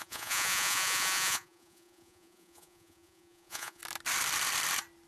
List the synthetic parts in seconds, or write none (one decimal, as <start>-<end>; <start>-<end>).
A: 0.0-3.8